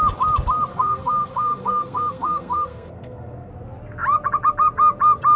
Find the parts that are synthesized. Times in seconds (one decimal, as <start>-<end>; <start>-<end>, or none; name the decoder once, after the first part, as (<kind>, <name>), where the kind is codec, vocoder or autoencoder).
0.7-3.5 (codec, SNAC)